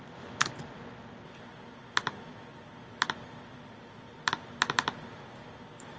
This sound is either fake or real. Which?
real